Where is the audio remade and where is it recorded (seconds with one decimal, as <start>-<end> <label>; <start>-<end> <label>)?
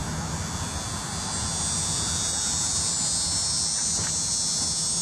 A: 0.0-5.0 recorded